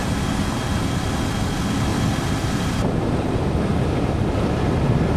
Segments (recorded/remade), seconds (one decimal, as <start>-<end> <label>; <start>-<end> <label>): 0.0-1.9 recorded; 1.9-5.2 remade